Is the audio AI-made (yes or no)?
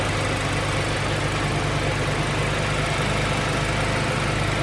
no